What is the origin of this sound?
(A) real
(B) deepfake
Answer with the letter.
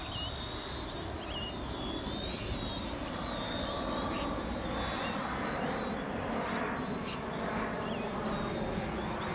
A